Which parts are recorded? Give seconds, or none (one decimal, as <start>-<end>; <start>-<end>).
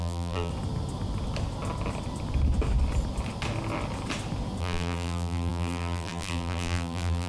0.5-4.6